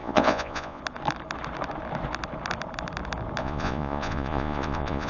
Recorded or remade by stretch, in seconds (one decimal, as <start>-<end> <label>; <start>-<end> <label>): 0.0-0.8 remade; 0.8-3.4 recorded; 3.4-5.1 remade